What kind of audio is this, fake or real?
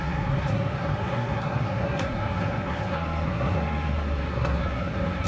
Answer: fake